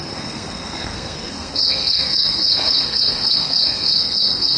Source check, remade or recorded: remade